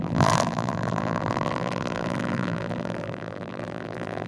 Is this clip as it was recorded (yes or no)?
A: no